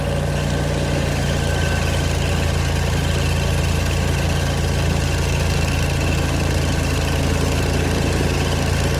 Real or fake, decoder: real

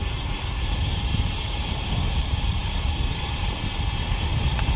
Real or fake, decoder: real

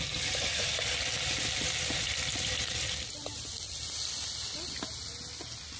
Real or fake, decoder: real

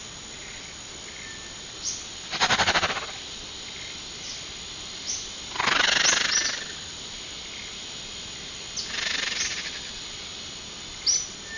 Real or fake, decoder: real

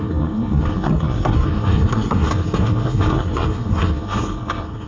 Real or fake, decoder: fake, codec, SNAC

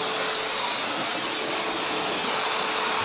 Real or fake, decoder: real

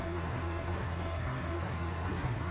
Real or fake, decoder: fake, codec, SNAC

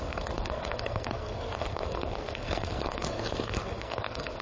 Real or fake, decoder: fake, codec, SNAC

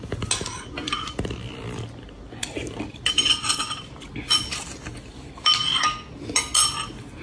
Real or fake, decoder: real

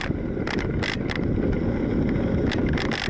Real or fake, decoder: real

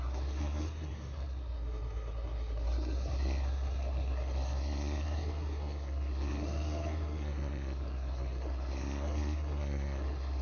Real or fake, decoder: fake, codec, SNAC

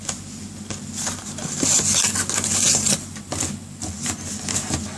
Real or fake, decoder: real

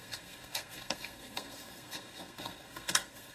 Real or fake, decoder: fake, codec, SNAC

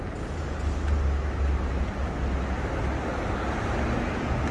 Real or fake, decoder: real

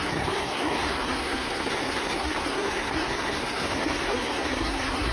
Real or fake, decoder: fake, codec, SNAC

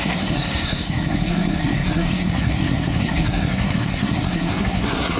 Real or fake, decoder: fake, codec, SNAC